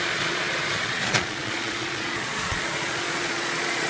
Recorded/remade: remade